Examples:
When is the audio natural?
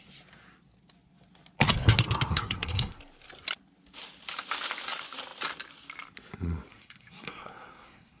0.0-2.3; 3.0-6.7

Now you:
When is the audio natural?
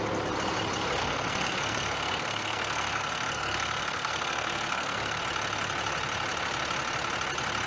0.0-1.0; 5.2-7.7